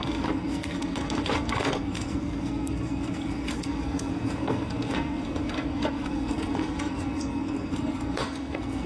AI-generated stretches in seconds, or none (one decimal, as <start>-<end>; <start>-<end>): 0.0-8.9